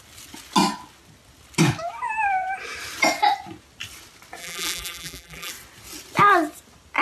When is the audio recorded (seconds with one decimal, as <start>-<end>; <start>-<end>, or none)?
0.0-4.4; 5.5-7.0